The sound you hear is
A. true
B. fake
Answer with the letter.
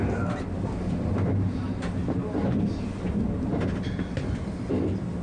A